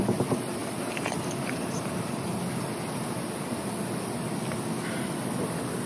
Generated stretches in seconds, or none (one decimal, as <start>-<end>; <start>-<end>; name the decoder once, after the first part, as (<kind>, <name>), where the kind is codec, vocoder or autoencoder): none